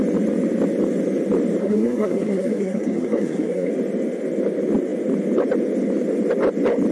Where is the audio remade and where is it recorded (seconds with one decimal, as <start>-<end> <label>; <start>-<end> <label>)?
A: 0.0-1.6 recorded; 1.6-3.7 remade; 3.7-6.9 recorded